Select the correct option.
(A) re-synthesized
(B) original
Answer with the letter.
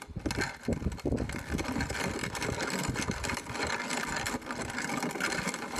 B